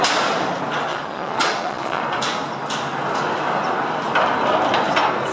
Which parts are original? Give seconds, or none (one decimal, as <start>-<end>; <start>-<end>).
0.0-0.9; 2.0-5.3

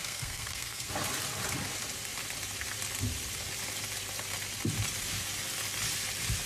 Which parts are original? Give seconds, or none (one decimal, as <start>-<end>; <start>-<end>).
0.9-6.5

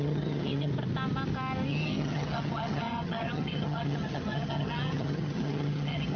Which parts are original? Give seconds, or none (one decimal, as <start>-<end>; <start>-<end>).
0.7-1.7

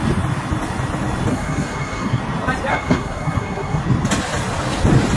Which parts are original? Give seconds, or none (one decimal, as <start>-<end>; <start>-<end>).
0.0-1.3; 2.2-2.7; 3.8-5.2

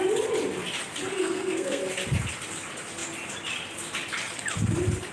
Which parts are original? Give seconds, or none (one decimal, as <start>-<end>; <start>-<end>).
0.0-1.1; 1.8-5.1

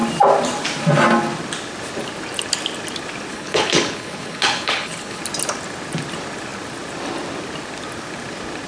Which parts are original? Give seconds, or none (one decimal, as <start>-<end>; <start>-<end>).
0.0-3.3; 5.2-8.7

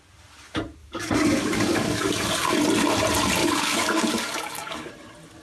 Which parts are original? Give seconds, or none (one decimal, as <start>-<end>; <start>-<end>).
0.0-0.8; 2.5-3.4; 4.9-5.4

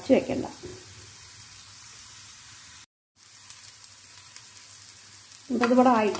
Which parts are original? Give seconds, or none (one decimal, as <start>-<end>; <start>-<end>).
0.0-0.7; 4.4-6.2